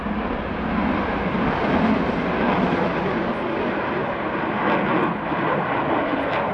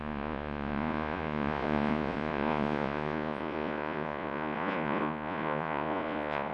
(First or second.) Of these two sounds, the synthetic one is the second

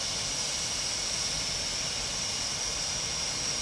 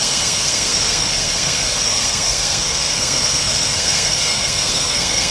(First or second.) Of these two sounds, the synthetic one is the second